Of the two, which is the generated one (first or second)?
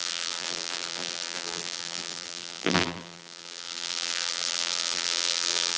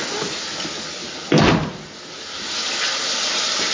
first